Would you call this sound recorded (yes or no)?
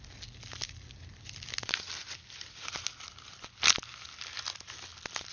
yes